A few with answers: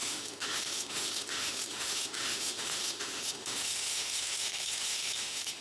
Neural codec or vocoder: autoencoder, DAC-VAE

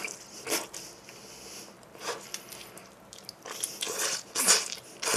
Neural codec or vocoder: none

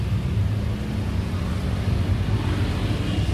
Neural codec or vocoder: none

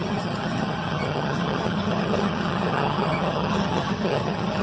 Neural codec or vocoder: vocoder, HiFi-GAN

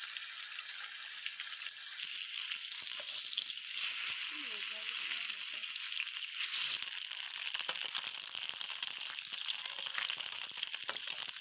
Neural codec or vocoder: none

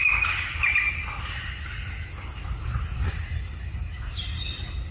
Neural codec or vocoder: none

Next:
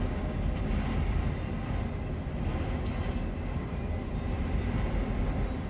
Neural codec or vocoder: none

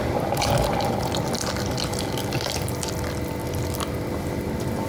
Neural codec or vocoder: none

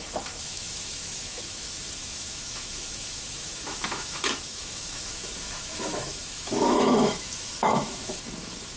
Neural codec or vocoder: autoencoder, DAC-VAE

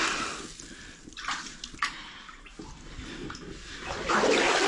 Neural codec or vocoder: none